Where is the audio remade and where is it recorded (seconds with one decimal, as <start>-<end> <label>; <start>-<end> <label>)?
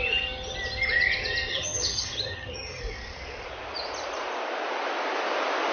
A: 0.0-1.5 recorded; 1.5-2.8 remade; 2.8-5.7 recorded